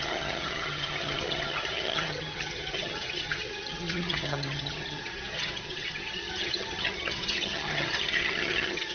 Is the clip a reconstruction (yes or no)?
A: yes